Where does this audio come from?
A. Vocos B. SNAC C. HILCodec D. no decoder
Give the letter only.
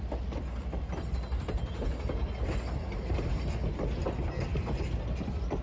D